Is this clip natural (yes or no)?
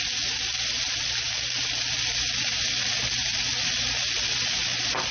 yes